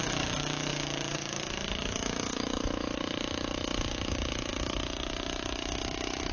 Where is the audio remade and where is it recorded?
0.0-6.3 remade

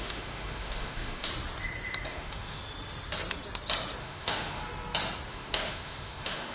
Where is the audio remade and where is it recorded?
0.0-1.3 remade; 1.3-2.1 recorded; 2.1-2.6 remade; 2.6-4.0 recorded; 4.0-4.6 remade; 4.6-5.3 recorded; 5.3-6.5 remade

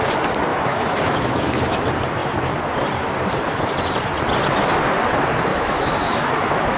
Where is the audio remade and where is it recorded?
0.0-0.5 recorded; 0.5-1.8 remade; 1.8-5.5 recorded; 5.5-6.8 remade

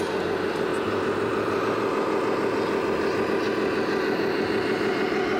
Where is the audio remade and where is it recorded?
0.0-5.4 recorded

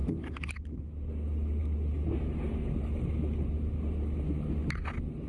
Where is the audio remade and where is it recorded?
0.0-5.3 recorded

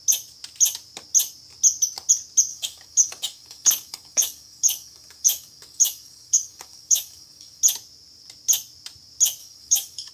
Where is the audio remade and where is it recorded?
0.0-2.5 recorded; 2.5-7.6 remade; 7.6-9.4 recorded; 9.4-10.1 remade

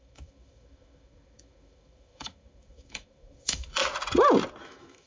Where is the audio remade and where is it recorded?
0.0-3.8 remade; 3.8-4.6 recorded; 4.6-5.1 remade